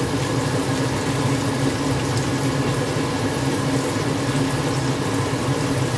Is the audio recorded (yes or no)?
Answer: yes